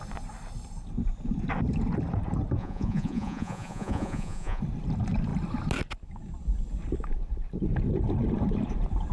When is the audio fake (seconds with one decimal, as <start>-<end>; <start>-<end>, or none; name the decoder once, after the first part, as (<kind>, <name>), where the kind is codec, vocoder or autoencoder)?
2.6-4.6 (vocoder, Vocos)